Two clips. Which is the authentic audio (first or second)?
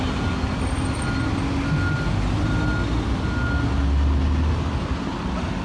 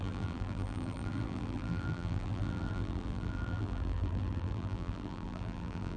first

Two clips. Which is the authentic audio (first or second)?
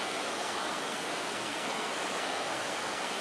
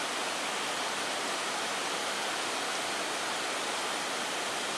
second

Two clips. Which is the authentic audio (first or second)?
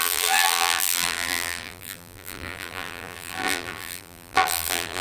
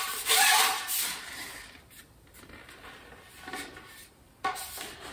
second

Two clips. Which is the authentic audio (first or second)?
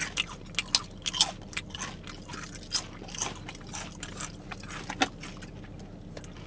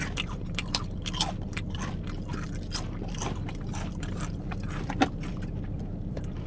first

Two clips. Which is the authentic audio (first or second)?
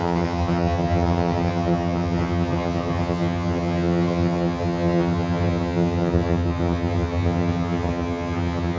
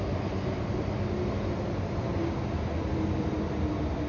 second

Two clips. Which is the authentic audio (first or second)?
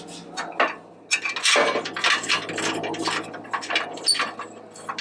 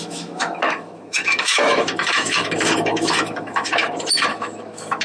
first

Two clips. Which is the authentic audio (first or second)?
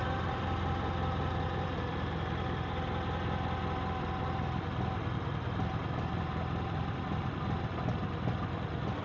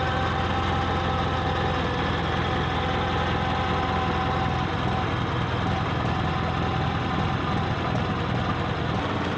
second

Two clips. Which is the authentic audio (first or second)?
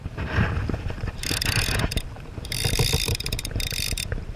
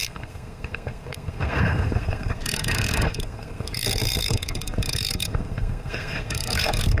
first